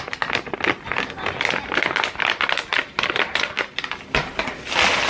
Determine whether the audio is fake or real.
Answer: real